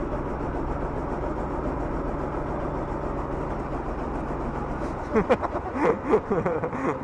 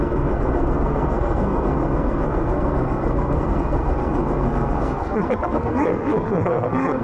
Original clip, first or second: first